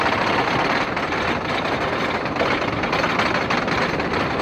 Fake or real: real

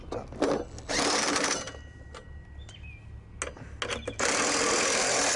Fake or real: real